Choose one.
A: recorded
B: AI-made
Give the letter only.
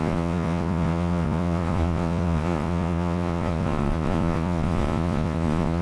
B